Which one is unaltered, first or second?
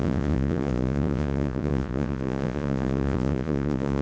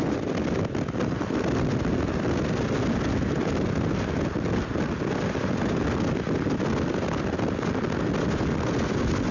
second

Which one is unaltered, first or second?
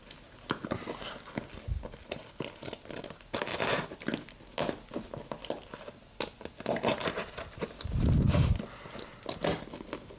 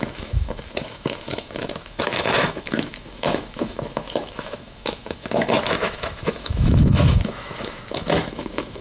first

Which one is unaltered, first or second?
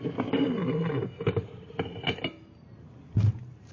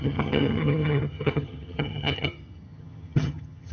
first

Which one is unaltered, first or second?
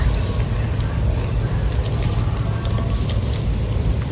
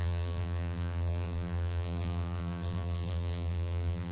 first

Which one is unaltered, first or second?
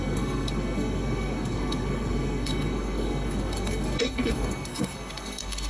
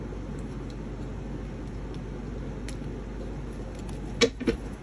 second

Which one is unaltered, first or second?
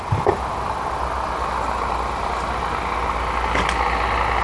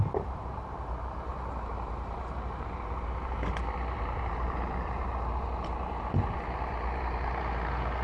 first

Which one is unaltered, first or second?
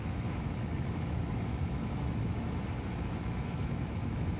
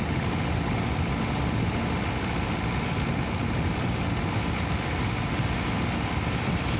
second